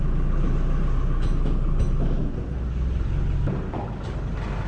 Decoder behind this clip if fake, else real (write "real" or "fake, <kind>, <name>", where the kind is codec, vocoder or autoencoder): real